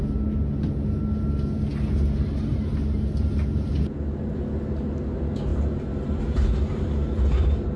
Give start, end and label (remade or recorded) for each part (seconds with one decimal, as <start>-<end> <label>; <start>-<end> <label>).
0.0-5.5 recorded; 5.5-6.2 remade; 6.2-7.8 recorded